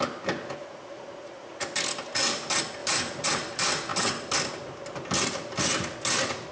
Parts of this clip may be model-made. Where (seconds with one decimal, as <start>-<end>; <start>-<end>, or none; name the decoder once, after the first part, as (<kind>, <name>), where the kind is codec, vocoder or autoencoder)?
0.6-1.5 (vocoder, Vocos)